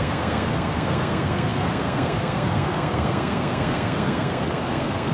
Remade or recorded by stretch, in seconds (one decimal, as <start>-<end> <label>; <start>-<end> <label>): 0.0-5.1 remade